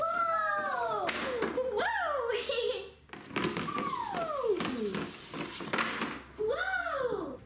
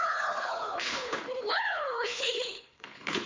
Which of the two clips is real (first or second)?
first